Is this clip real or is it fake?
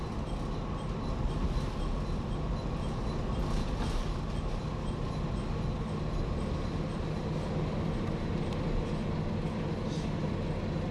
real